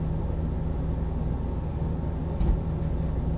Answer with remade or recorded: recorded